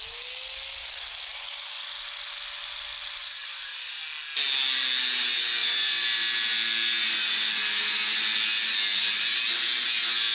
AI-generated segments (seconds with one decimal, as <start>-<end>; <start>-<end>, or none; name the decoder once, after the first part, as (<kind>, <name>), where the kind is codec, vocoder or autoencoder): 3.2-4.0 (vocoder, Vocos)